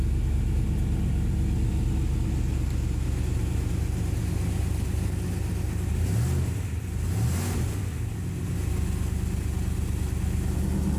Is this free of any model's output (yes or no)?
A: yes